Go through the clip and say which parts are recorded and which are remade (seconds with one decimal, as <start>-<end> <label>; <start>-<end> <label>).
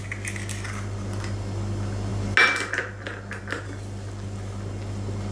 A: 0.0-5.3 recorded